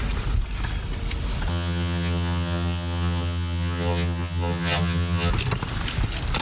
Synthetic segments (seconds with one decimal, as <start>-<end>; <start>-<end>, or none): 1.5-5.3